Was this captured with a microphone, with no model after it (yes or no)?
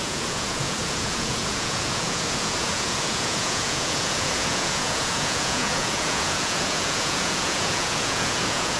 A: no